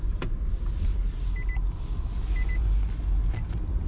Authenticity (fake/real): real